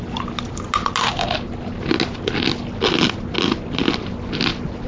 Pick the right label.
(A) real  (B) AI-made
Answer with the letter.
A